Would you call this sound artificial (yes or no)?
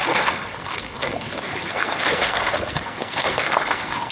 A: yes